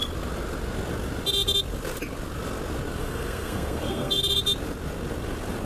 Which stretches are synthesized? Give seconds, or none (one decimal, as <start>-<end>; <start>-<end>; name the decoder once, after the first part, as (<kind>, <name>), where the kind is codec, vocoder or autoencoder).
3.0-4.2 (codec, SNAC)